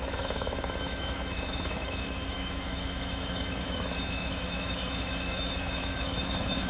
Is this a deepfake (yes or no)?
yes